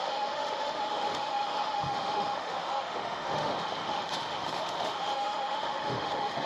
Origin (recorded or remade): remade